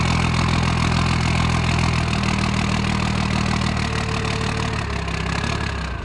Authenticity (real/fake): real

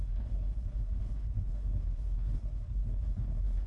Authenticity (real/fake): fake